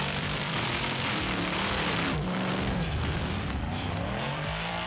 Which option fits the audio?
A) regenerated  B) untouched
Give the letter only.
A